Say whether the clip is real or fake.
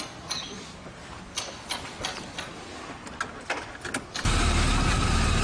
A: real